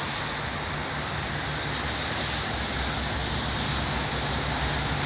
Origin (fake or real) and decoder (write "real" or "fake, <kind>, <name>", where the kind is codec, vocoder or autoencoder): real